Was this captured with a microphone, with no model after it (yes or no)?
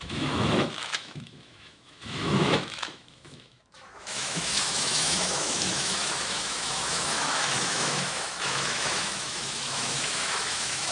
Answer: no